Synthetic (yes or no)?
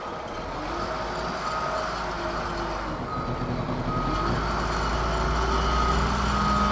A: no